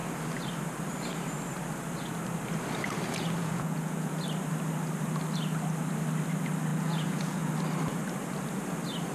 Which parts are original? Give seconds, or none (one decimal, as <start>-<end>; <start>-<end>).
0.0-3.4; 4.1-6.7; 7.5-9.1